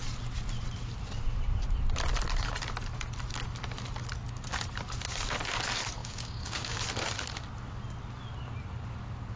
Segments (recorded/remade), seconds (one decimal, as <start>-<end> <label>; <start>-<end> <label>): 0.0-6.0 recorded; 6.0-6.8 remade; 6.8-9.4 recorded